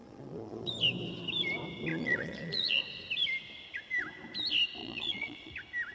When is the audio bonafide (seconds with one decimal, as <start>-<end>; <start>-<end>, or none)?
0.7-1.9; 2.8-4.8; 5.5-5.9